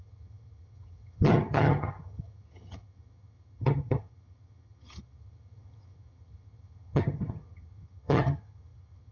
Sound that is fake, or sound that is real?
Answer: fake